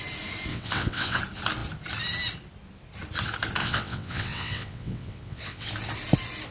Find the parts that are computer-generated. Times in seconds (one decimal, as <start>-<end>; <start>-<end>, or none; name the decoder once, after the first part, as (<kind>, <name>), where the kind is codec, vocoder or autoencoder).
0.5-1.2 (vocoder, WaveNeXt); 3.6-5.7